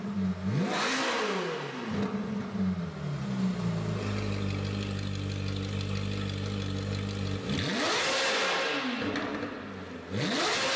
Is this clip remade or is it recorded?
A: recorded